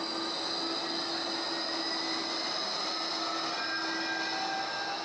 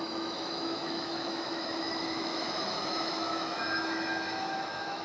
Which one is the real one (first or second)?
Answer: first